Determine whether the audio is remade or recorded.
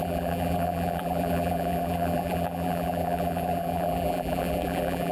remade